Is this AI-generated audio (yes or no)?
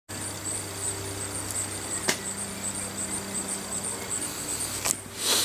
no